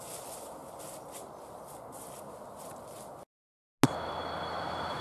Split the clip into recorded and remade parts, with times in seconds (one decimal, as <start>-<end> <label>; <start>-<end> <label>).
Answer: 0.0-5.0 recorded